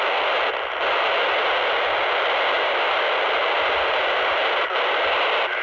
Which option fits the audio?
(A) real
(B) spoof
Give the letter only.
A